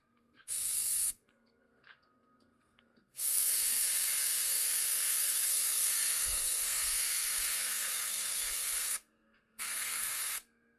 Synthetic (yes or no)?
yes